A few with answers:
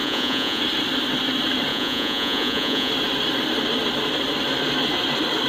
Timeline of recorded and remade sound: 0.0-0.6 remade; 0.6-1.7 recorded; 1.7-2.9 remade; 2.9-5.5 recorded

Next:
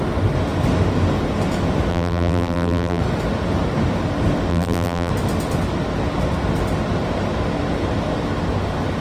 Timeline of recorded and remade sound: 0.0-1.9 recorded; 1.9-3.0 remade; 3.0-4.5 recorded; 4.5-5.1 remade; 5.1-9.0 recorded

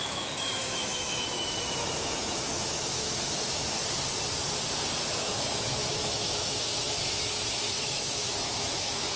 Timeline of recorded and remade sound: 0.0-3.8 remade; 3.8-5.1 recorded; 5.1-9.2 remade

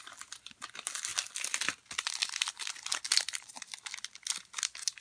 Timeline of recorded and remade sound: 0.0-5.0 recorded

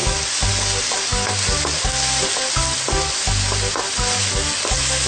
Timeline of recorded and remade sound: 0.0-5.1 recorded